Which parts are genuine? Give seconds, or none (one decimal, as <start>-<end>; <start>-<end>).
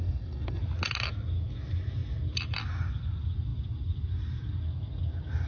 0.6-5.5